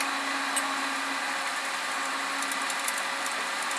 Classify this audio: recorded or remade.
recorded